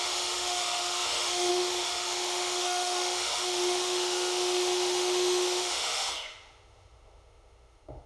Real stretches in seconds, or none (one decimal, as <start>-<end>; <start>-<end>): none